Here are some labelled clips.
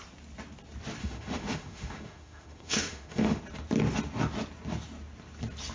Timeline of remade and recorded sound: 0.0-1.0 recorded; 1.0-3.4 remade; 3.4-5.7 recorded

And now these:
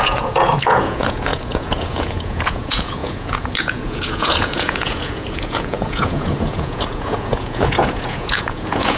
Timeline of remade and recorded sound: 0.0-9.0 remade

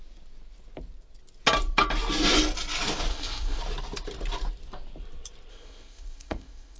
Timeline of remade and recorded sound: 0.0-3.1 recorded; 3.1-3.6 remade; 3.6-5.5 recorded; 5.5-6.8 remade

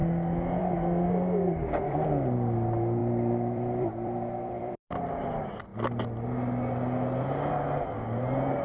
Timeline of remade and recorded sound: 0.0-3.0 recorded; 3.0-5.3 remade; 5.3-8.6 recorded

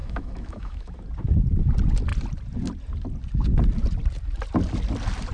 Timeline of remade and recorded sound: 0.0-0.9 remade; 0.9-5.3 recorded

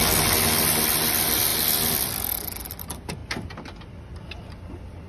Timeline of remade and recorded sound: 0.0-5.1 recorded

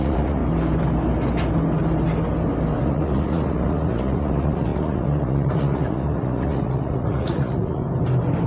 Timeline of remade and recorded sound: 0.0-0.4 remade; 0.4-2.8 recorded; 2.8-7.8 remade; 7.8-8.5 recorded